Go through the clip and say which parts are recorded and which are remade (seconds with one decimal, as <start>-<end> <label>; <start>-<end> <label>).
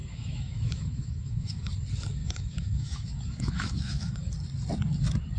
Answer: 0.0-1.7 remade; 1.7-2.2 recorded; 2.2-4.3 remade; 4.3-5.4 recorded